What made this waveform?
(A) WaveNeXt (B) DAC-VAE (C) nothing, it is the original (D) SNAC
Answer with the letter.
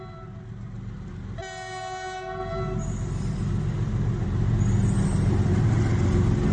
C